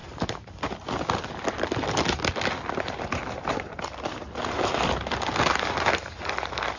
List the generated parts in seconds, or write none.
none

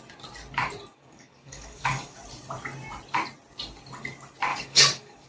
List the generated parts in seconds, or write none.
0.9-2.2 (codec, DAC); 4.5-5.3